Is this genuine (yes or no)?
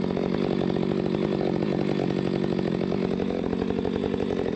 yes